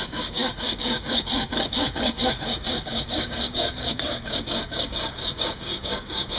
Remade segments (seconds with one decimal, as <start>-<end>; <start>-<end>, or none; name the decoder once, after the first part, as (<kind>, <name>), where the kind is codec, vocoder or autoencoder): 0.0-6.4 (codec, DAC)